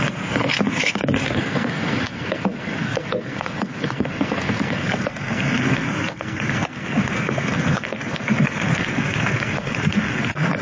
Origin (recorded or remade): remade